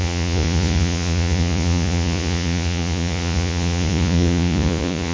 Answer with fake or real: fake